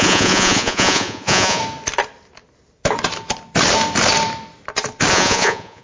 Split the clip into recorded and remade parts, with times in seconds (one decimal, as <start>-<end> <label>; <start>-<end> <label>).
0.0-1.6 remade; 1.6-5.1 recorded; 5.1-5.8 remade